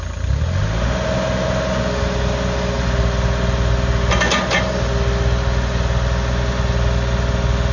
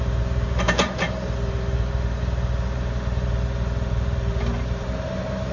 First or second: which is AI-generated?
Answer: second